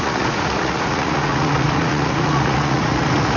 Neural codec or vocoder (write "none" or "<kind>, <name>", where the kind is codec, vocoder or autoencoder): vocoder, Vocos